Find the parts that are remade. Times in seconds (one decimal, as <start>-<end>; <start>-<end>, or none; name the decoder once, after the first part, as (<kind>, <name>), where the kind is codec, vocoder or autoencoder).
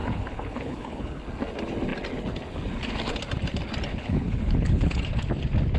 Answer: 0.0-1.2 (codec, HILCodec); 3.9-5.0